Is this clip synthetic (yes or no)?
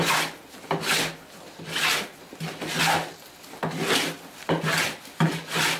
no